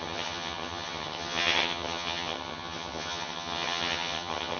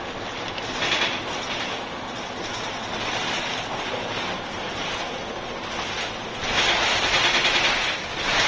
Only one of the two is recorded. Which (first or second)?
second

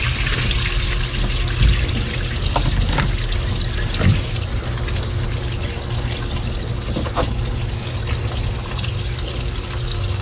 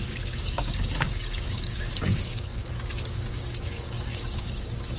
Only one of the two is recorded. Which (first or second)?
first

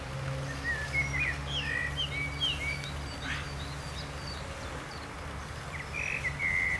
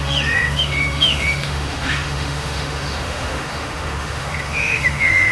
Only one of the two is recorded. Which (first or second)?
first